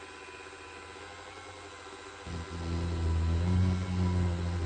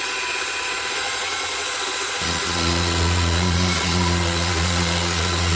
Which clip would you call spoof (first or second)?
second